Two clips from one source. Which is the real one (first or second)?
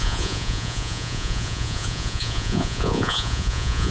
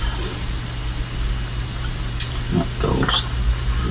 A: second